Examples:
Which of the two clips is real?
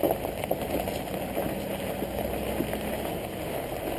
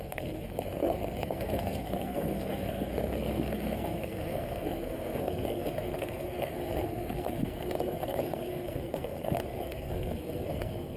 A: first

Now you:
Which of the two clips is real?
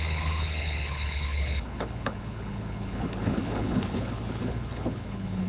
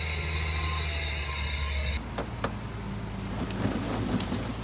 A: second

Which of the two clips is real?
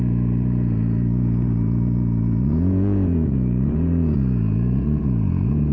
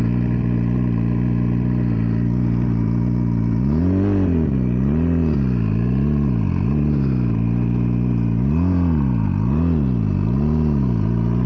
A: second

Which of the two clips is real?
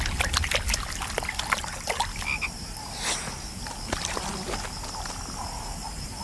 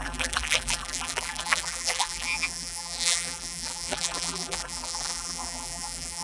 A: first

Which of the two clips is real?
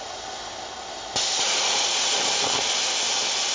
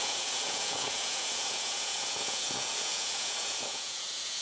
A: first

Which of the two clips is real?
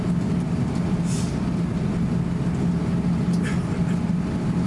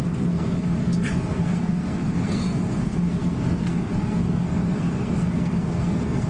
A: first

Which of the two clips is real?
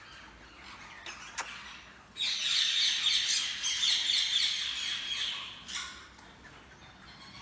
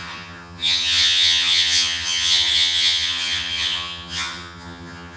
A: first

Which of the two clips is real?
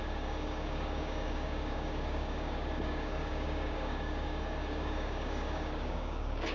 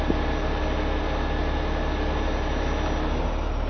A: second